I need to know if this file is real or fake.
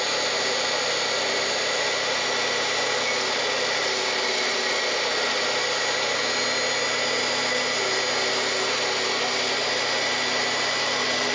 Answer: real